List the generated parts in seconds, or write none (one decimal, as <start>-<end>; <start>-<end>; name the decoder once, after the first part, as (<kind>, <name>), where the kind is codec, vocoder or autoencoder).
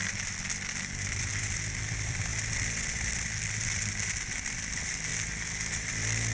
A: 0.0-5.1 (vocoder, BigVGAN v2); 5.7-6.3